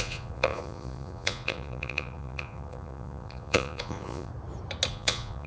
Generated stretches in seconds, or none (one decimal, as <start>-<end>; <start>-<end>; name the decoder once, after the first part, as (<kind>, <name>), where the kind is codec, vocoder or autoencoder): 0.0-4.3 (vocoder, Vocos); 4.9-5.5

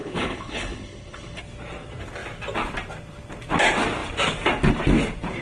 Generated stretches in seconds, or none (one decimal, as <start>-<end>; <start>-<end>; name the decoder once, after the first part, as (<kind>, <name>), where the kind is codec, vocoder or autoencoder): 0.0-1.4 (codec, HILCodec)

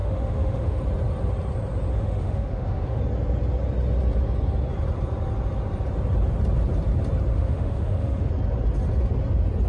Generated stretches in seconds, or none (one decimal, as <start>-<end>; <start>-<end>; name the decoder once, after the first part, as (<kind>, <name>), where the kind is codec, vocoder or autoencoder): 0.0-0.8 (autoencoder, DAC-VAE); 1.9-3.0; 7.3-8.3

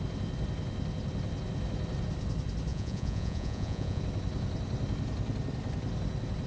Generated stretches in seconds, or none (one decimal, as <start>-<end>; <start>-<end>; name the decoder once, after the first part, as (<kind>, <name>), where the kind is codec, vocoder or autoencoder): 2.7-4.0 (vocoder, Vocos)

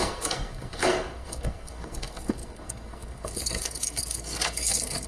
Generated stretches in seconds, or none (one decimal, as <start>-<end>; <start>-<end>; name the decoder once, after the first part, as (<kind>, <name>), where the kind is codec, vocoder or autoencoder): 0.0-5.1 (codec, SNAC)